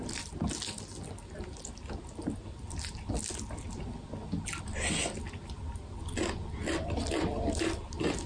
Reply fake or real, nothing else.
real